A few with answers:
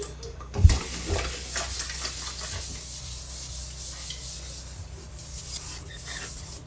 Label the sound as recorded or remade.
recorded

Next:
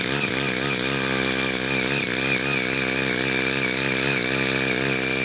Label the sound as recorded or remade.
recorded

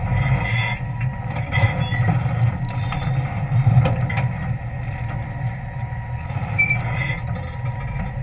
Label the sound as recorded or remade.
recorded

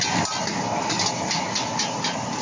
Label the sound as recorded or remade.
recorded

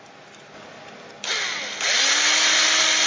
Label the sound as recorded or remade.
recorded